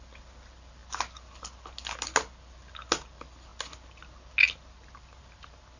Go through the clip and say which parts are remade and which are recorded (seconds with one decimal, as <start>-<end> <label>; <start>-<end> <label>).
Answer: 0.0-5.8 recorded

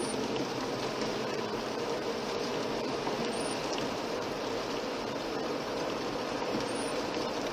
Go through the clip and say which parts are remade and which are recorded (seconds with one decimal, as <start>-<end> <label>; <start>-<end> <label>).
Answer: 0.0-1.1 recorded; 1.1-7.5 remade

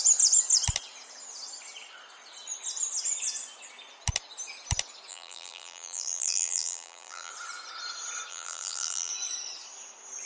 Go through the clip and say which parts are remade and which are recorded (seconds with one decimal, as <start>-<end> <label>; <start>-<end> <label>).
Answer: 0.0-5.1 recorded; 5.1-7.3 remade; 7.3-8.3 recorded; 8.3-9.1 remade; 9.1-10.3 recorded